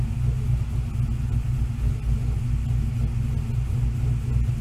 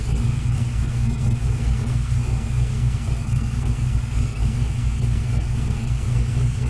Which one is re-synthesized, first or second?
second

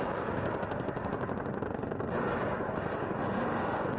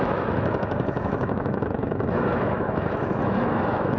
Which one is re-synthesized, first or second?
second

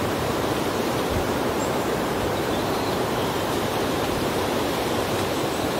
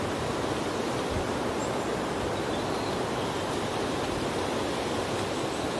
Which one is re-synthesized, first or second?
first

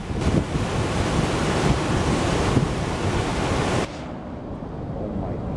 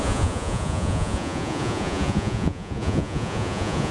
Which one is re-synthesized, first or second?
second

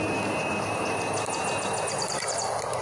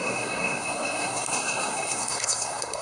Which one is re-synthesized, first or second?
second